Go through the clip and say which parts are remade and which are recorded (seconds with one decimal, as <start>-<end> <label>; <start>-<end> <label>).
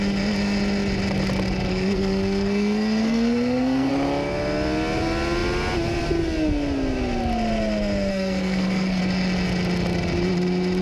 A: 0.0-1.7 recorded; 1.7-3.9 remade; 3.9-8.1 recorded; 8.1-9.0 remade; 9.0-10.8 recorded